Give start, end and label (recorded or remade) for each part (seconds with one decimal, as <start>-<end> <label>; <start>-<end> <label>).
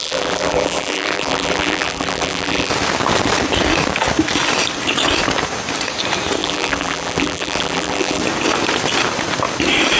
0.0-2.7 remade; 2.7-6.4 recorded; 6.4-8.2 remade; 8.2-10.0 recorded